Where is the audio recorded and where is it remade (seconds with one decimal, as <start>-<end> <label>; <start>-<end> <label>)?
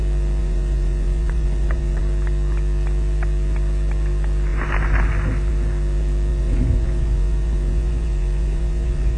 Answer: 0.0-0.4 recorded; 0.4-2.0 remade; 2.0-6.3 recorded; 6.3-9.2 remade